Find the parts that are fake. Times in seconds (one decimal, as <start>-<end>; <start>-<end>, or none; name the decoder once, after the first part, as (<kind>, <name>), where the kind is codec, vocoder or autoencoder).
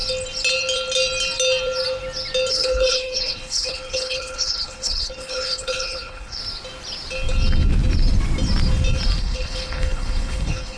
2.5-6.4 (codec, HILCodec); 9.2-10.8